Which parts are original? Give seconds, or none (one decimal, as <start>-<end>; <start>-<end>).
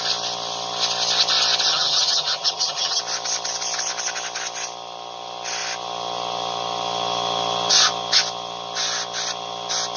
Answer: 0.0-1.7; 3.0-10.0